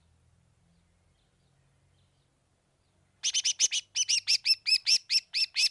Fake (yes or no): no